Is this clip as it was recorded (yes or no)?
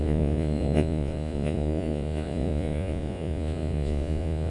no